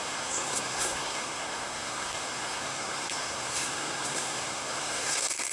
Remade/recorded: remade